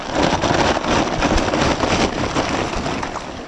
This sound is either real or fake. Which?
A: real